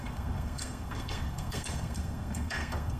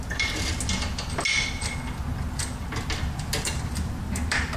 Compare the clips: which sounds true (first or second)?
second